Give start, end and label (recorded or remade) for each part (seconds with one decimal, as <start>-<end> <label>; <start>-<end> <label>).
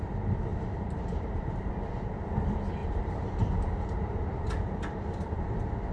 0.0-0.5 recorded; 0.5-1.7 remade; 1.7-2.8 recorded; 2.8-4.4 remade; 4.4-5.9 recorded